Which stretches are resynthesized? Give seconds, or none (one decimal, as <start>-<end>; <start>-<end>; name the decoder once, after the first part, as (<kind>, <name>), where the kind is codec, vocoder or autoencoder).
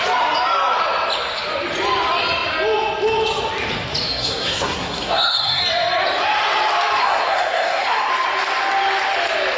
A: 4.1-5.6 (codec, SNAC); 7.0-8.1